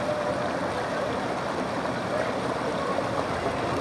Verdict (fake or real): real